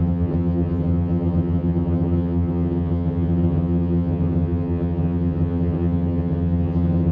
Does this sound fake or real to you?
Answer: fake